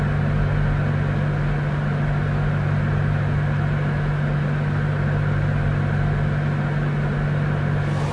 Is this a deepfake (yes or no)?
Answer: no